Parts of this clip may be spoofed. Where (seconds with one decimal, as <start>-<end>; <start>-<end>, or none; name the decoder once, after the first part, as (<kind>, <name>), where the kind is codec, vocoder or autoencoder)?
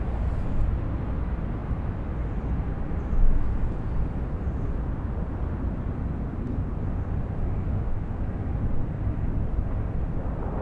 7.7-8.2 (autoencoder, DAC-VAE)